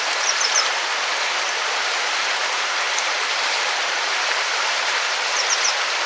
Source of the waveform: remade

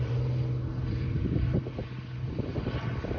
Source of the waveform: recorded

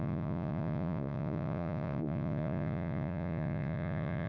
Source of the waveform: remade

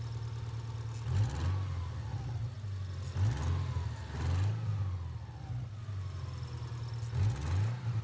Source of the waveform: recorded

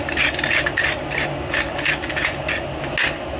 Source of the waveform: recorded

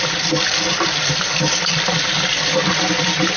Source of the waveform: recorded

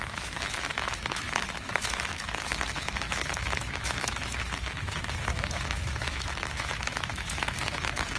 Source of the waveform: remade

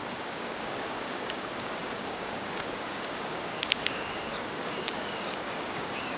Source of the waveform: remade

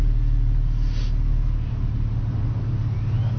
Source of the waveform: recorded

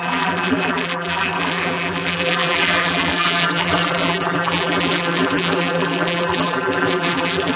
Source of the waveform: remade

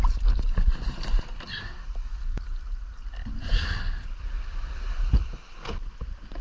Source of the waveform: recorded